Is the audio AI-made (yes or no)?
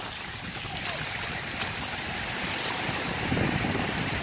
no